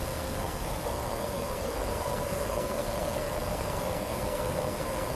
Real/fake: fake